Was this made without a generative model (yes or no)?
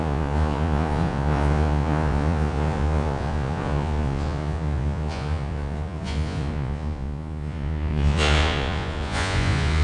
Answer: no